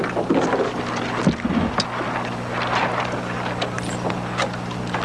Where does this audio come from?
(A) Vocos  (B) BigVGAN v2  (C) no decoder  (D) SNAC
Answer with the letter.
C